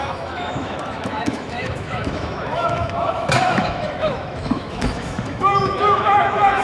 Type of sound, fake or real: fake